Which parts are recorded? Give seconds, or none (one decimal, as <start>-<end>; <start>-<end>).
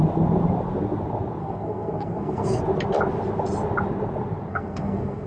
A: 0.0-1.4; 2.6-4.5